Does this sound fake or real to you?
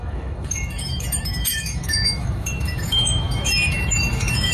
fake